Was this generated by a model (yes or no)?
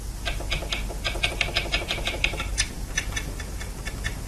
no